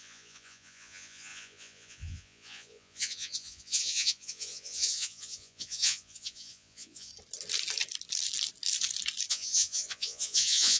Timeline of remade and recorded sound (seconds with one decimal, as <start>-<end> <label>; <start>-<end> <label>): 0.0-7.1 remade; 7.1-9.3 recorded; 9.3-10.8 remade